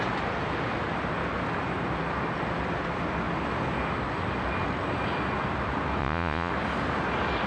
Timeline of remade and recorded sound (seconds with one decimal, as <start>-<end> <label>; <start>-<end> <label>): 0.0-6.0 recorded; 6.0-6.5 remade; 6.5-7.5 recorded